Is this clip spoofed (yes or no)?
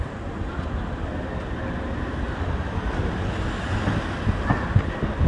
no